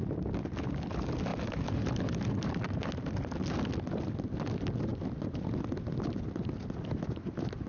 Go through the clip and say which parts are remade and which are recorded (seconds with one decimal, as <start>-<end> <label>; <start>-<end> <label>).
0.0-7.7 recorded